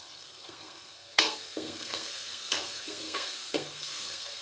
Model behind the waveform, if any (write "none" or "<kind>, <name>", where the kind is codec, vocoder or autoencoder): codec, SNAC